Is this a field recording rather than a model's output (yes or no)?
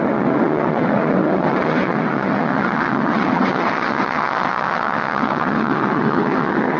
no